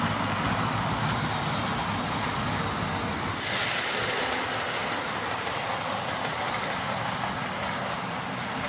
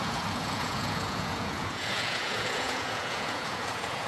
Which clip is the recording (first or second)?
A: first